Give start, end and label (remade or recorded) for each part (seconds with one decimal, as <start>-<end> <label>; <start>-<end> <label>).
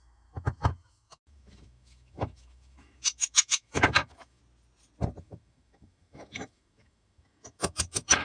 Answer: 0.0-4.4 remade; 4.4-5.2 recorded; 5.2-8.2 remade